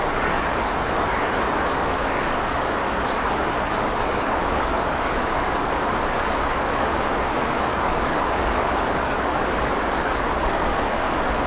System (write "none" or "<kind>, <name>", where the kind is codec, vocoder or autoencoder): codec, DAC